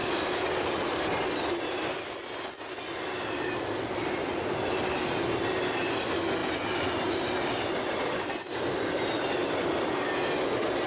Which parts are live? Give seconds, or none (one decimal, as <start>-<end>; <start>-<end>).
0.5-9.4; 10.0-10.9